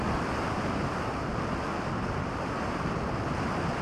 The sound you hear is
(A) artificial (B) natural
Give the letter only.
B